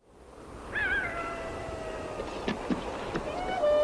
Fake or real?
real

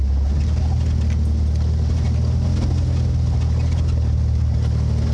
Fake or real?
real